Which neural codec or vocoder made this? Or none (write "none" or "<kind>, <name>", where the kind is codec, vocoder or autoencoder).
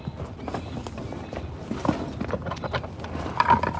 none